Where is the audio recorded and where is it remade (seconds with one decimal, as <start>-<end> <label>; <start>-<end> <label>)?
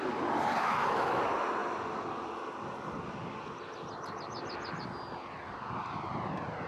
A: 0.0-0.6 recorded; 0.6-1.2 remade; 1.2-6.7 recorded